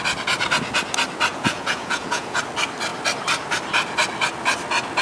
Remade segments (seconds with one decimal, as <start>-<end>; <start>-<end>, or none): 1.3-2.4